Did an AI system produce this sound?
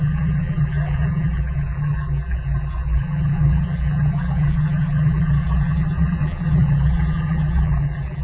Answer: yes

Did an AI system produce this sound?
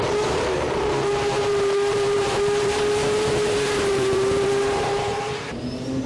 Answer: yes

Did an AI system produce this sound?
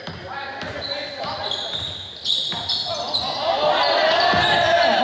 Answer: no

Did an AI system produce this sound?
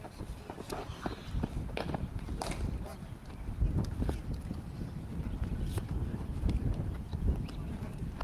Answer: yes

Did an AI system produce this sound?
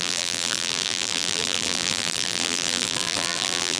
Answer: yes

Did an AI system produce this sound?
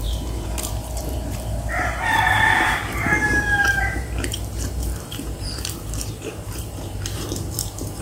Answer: yes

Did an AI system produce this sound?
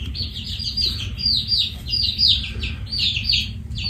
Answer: no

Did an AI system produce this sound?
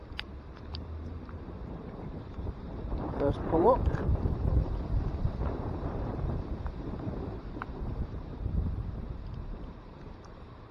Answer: yes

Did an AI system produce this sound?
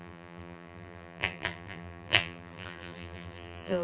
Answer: yes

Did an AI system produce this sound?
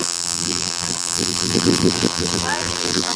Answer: yes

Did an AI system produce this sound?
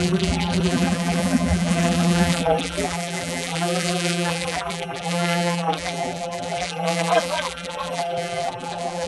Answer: yes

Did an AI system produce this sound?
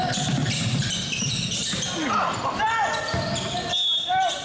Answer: no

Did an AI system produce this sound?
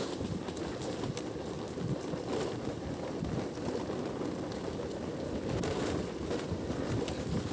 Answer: no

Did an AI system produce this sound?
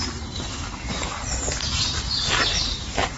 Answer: no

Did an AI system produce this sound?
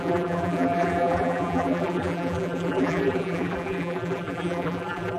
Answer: yes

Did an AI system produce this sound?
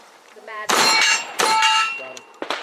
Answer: yes